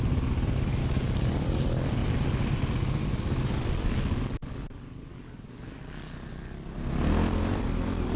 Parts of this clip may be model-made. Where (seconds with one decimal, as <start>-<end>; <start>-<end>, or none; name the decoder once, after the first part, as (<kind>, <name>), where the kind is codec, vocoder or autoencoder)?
0.8-1.6 (codec, DAC); 5.1-5.8